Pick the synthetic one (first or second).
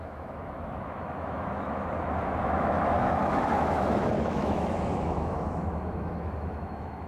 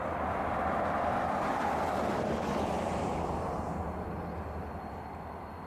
first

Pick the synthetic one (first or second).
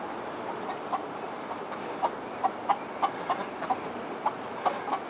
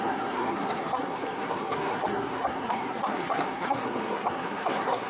second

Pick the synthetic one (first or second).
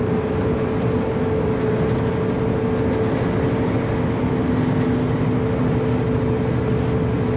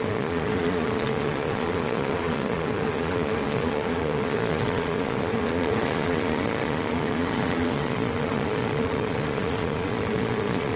second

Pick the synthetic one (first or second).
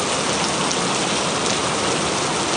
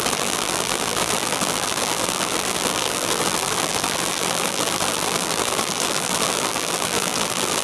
second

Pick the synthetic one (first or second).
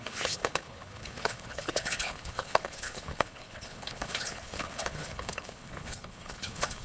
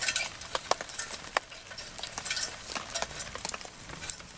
first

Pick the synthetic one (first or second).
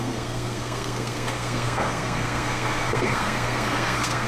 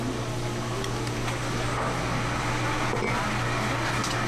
first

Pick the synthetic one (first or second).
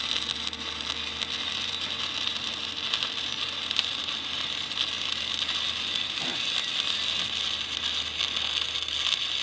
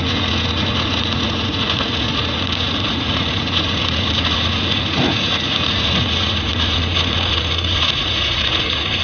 second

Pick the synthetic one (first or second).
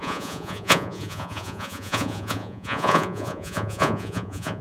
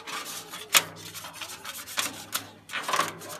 first